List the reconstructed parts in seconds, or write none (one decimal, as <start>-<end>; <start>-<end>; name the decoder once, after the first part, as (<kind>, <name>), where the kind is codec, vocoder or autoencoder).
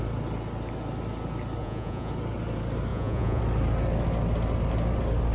1.6-2.1 (vocoder, Vocos); 2.9-3.4